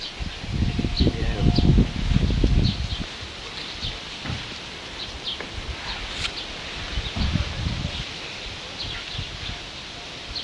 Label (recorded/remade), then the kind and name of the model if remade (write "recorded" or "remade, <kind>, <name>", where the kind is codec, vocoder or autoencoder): recorded